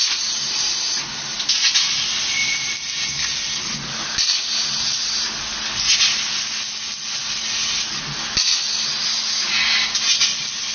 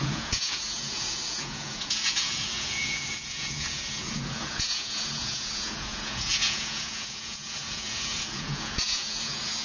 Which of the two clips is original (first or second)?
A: first